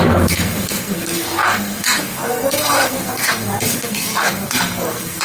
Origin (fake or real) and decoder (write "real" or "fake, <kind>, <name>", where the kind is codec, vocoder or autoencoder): fake, codec, SNAC